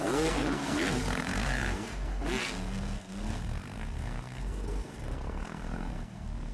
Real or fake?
fake